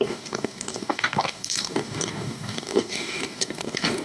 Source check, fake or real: fake